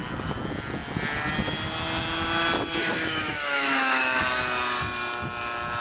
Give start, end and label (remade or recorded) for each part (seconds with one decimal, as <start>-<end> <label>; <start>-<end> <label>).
0.0-2.8 recorded; 2.8-4.2 remade; 4.2-5.8 recorded